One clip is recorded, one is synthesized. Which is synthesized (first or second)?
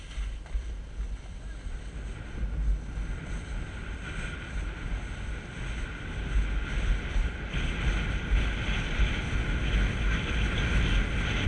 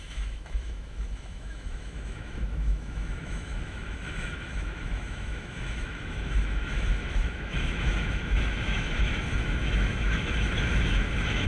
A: second